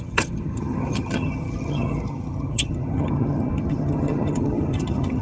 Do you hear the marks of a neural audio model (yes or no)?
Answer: yes